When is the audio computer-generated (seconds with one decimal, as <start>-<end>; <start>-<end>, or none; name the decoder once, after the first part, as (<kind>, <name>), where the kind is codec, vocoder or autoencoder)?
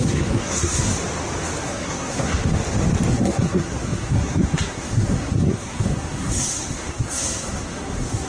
0.0-0.9 (codec, SNAC); 1.6-2.6; 3.1-8.3